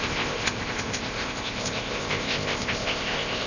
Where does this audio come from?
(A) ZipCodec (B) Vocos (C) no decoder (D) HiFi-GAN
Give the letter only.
A